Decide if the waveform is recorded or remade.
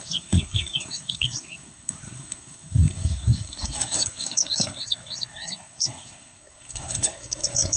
remade